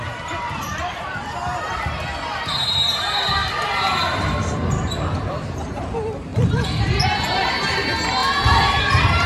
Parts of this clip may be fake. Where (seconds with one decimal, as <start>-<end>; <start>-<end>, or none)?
0.0-1.5; 2.4-9.3